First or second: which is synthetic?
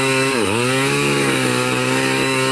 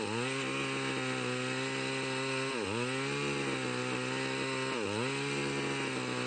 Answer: first